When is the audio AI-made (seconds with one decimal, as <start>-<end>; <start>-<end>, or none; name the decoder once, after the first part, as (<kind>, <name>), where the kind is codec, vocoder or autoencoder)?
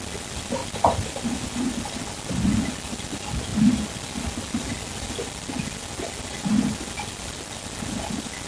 0.6-1.6 (vocoder, BigVGAN v2)